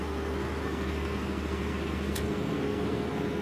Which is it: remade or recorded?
remade